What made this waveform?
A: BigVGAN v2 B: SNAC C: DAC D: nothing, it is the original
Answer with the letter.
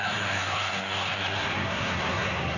B